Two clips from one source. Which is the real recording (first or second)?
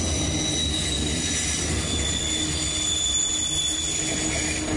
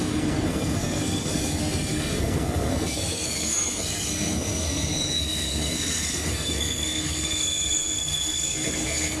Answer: first